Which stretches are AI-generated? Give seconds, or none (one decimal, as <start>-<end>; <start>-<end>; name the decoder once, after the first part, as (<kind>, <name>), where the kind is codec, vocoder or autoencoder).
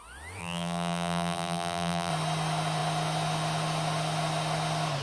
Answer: 0.4-2.1 (vocoder, BigVGAN v2)